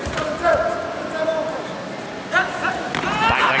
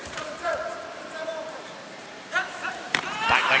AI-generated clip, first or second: second